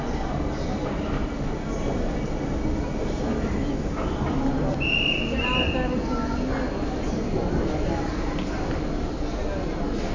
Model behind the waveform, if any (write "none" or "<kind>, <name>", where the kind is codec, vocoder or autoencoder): none